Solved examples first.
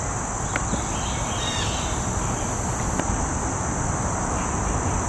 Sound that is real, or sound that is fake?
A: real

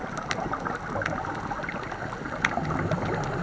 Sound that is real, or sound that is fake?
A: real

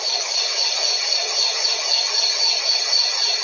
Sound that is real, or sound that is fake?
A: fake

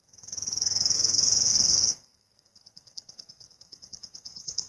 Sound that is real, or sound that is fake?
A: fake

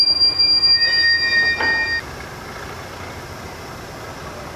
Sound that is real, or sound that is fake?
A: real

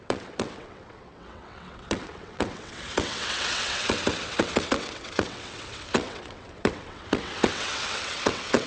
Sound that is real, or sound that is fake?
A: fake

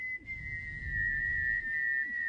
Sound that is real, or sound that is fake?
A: real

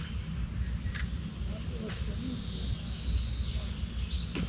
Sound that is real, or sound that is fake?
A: real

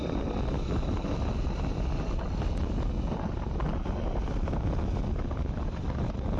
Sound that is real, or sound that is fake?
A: real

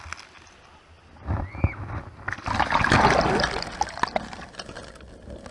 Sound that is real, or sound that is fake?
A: real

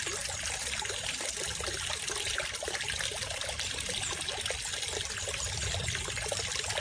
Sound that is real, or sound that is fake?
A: real